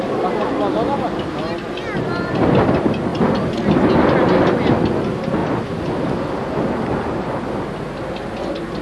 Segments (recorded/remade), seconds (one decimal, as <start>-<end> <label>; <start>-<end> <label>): 0.0-8.8 recorded